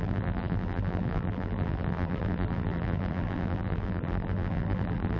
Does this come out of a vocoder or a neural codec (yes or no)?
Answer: yes